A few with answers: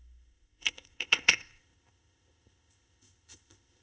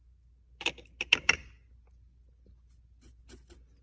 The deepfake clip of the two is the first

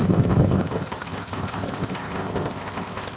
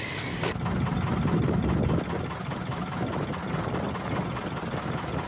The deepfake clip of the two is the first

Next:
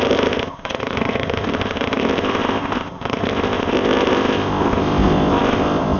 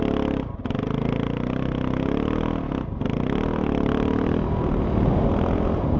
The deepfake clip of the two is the first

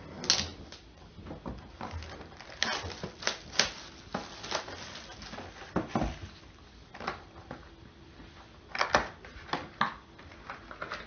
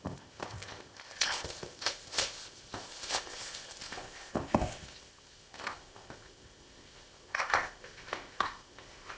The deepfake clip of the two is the second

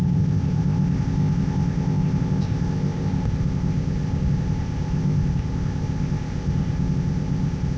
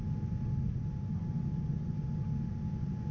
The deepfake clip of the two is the first